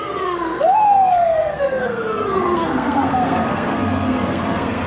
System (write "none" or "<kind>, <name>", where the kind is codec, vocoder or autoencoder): codec, SNAC